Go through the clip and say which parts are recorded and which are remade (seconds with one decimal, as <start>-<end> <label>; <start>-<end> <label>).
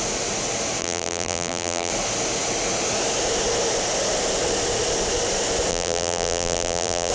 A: 0.0-0.8 recorded; 0.8-1.9 remade; 1.9-5.7 recorded; 5.7-7.1 remade